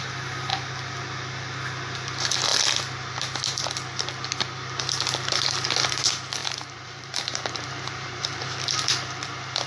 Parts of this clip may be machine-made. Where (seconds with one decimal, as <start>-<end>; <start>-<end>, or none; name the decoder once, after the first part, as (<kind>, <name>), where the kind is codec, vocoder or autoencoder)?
6.4-8.4 (vocoder, BigVGAN v2)